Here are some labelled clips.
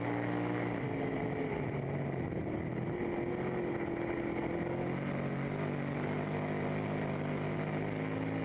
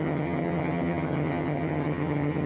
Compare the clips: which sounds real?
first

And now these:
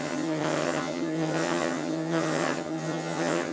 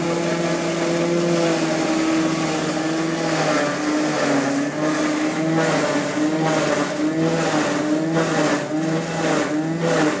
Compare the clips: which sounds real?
second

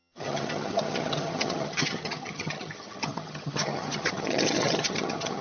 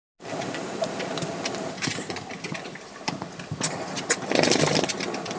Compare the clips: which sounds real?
second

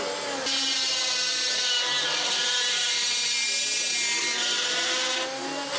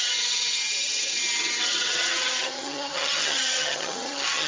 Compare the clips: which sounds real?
first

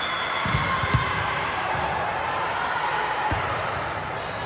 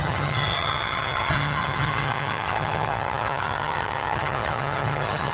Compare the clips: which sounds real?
first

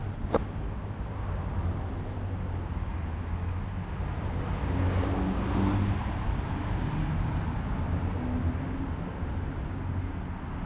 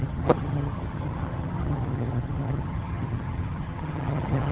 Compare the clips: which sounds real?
first